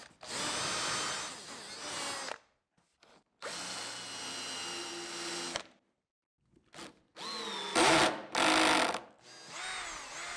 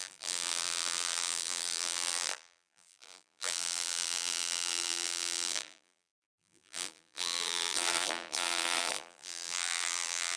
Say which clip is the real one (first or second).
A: first